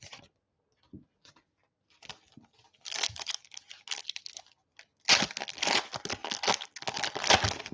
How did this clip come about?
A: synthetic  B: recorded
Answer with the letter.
B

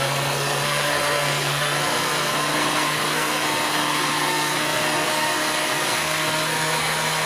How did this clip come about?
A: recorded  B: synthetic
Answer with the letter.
B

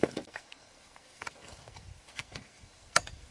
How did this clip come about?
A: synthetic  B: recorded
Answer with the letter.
A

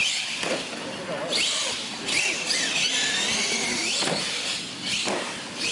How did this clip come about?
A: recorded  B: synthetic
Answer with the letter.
A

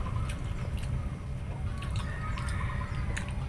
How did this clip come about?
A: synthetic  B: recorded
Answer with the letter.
B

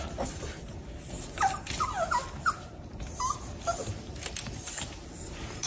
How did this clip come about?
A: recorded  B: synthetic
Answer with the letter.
A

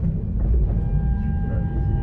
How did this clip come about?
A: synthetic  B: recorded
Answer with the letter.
B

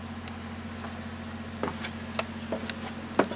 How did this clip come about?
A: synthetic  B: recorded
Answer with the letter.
B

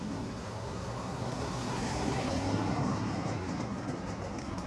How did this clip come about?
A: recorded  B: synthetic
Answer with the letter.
B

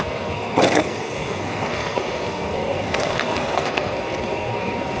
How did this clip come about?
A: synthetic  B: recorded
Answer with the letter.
A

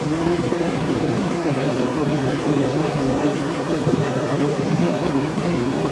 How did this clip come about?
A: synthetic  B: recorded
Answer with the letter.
A